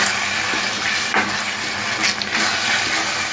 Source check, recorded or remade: recorded